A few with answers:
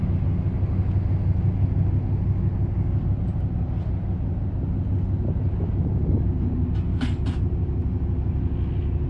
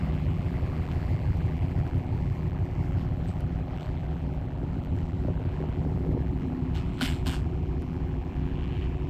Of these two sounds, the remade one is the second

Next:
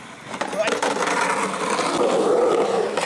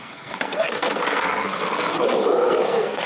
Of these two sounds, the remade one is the second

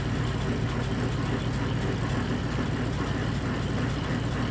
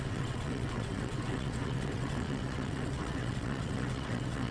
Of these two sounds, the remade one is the second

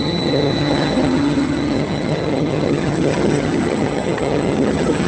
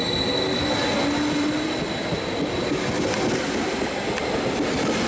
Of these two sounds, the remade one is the first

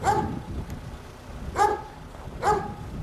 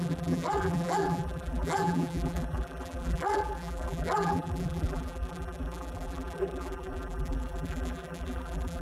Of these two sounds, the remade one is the second